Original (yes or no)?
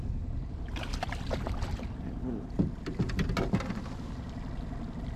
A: yes